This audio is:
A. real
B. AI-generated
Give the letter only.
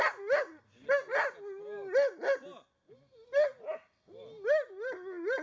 A